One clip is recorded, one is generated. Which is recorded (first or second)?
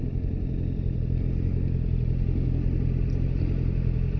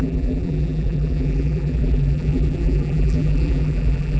first